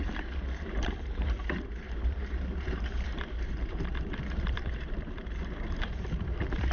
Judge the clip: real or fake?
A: fake